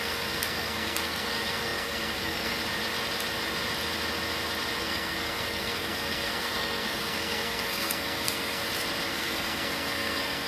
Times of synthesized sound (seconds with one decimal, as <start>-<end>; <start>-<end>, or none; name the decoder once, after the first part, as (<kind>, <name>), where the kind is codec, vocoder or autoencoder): 0.0-2.6 (codec, SNAC); 4.8-8.6; 9.1-10.5